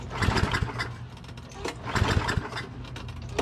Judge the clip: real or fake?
real